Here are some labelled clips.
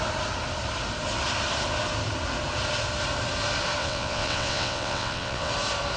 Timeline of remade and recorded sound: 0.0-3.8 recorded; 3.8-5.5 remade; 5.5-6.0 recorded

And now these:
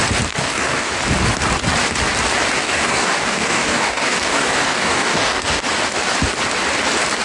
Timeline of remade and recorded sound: 0.0-0.4 recorded; 0.4-0.9 remade; 0.9-2.6 recorded; 2.6-5.6 remade; 5.6-7.2 recorded